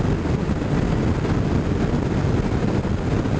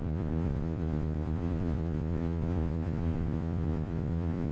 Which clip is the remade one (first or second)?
second